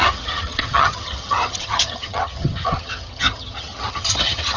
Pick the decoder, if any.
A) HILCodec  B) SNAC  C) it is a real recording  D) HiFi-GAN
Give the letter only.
D